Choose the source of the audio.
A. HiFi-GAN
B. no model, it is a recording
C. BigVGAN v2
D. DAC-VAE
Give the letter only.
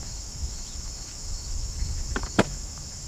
D